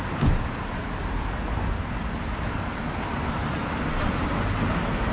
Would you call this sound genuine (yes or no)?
no